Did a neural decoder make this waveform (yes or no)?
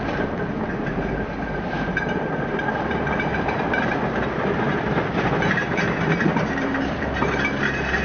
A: yes